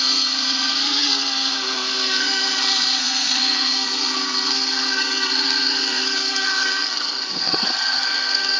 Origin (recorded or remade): remade